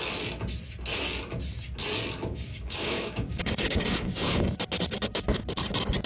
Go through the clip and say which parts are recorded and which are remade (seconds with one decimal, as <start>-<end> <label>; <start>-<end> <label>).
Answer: 0.0-2.3 recorded; 2.3-4.5 remade; 4.5-6.1 recorded